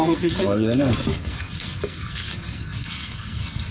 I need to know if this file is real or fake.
fake